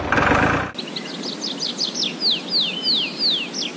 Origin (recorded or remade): recorded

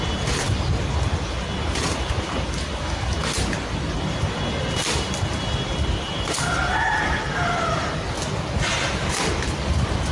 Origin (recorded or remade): recorded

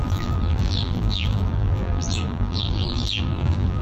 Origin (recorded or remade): remade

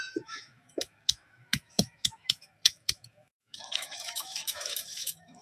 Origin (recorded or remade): remade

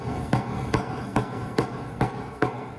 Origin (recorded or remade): remade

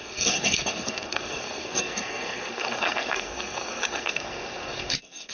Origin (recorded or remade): remade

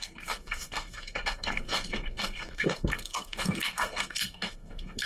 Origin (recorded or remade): remade